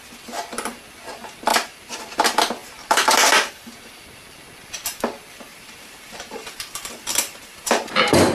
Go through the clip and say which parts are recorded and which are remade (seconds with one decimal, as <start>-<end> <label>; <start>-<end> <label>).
0.0-1.5 recorded; 1.5-2.0 remade; 2.0-2.6 recorded; 2.6-3.5 remade; 3.5-5.5 recorded; 5.5-8.3 remade